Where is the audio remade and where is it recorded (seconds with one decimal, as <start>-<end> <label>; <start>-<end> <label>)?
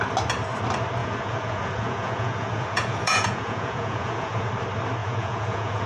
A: 0.0-1.0 recorded; 1.0-4.5 remade; 4.5-5.0 recorded; 5.0-5.9 remade